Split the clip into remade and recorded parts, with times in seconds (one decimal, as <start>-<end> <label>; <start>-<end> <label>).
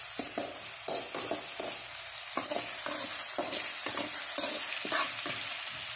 0.0-6.0 recorded